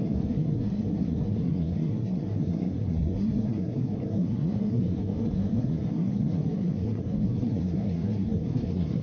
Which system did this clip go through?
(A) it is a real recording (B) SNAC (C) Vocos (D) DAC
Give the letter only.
B